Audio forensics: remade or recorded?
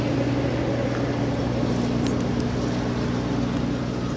recorded